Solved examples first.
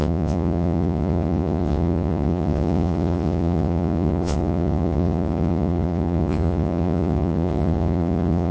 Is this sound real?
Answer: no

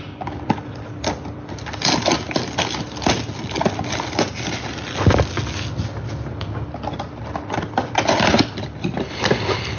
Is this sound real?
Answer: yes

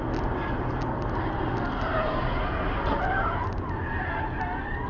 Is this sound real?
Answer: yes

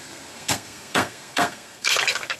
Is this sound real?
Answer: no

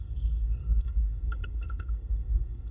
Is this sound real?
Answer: no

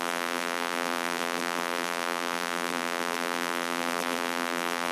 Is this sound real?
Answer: no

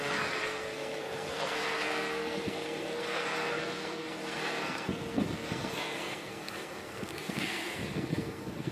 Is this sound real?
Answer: no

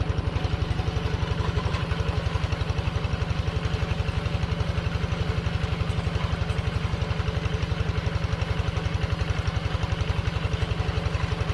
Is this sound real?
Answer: yes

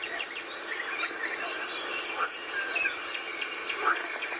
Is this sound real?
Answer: yes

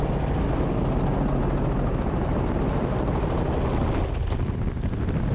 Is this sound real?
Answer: yes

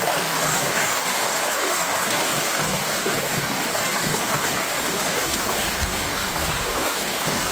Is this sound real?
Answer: no